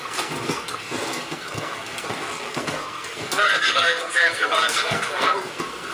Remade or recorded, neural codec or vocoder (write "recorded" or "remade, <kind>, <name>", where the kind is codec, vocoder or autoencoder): remade, codec, SNAC